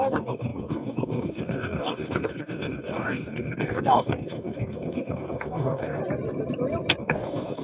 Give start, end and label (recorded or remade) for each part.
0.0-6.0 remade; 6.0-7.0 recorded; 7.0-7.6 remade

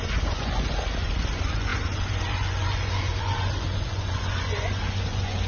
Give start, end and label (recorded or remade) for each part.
0.0-5.5 remade